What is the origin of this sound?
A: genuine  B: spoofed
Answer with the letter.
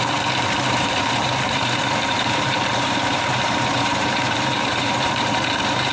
B